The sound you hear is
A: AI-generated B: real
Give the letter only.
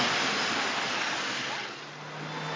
B